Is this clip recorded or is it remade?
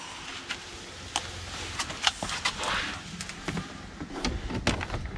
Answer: recorded